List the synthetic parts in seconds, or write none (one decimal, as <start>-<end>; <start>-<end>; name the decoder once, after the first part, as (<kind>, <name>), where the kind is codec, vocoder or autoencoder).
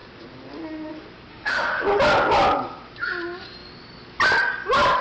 1.3-1.8 (autoencoder, DAC-VAE)